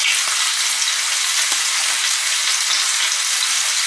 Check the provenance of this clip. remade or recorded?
recorded